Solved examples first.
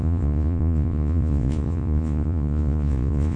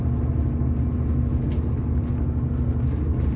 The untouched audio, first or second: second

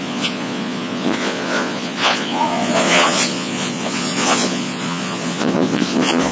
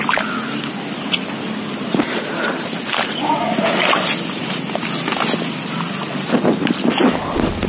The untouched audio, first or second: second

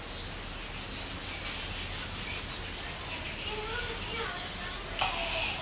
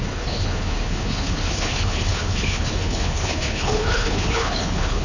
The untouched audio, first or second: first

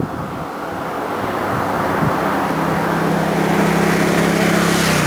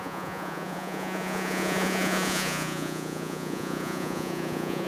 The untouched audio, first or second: first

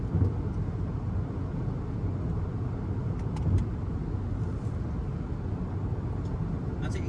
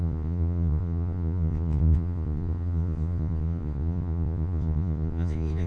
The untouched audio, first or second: first